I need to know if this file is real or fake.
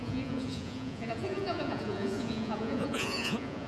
fake